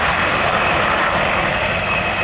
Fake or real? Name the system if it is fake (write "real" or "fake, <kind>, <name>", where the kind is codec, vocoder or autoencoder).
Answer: real